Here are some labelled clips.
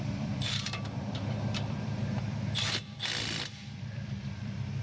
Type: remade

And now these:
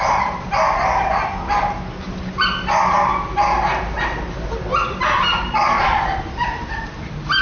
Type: recorded